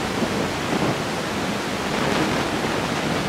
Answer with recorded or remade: recorded